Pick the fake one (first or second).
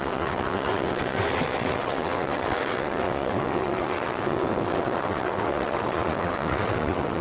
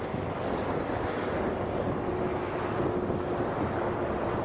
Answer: first